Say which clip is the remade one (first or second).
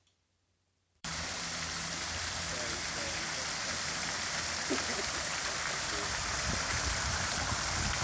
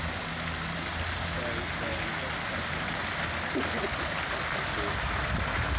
first